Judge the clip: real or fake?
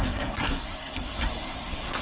fake